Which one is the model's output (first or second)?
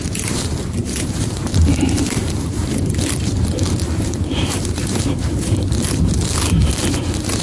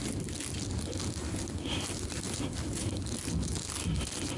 first